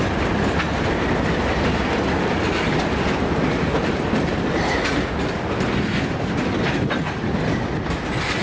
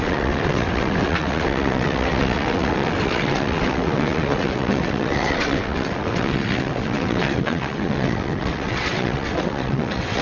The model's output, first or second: second